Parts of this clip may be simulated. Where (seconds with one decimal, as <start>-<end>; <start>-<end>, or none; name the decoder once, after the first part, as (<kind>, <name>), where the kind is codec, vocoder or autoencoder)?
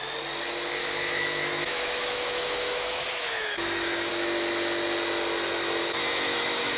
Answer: 0.8-4.1 (autoencoder, DAC-VAE); 5.8-6.8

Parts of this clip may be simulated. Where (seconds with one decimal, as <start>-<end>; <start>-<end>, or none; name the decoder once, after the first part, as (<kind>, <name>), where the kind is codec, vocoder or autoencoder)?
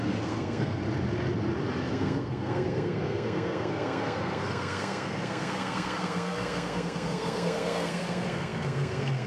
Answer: 0.0-0.8 (codec, SNAC); 1.9-9.3